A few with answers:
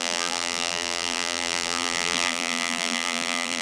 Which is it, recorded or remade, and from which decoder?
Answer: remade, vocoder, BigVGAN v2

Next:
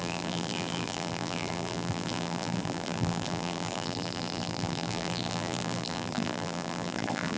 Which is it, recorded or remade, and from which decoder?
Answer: remade, vocoder, BigVGAN v2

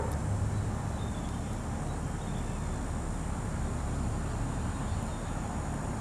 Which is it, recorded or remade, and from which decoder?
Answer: recorded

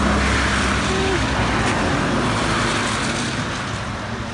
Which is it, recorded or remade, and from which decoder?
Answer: recorded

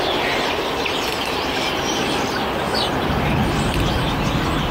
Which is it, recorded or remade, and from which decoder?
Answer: recorded